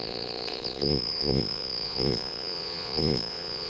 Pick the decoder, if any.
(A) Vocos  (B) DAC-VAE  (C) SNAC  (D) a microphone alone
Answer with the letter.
A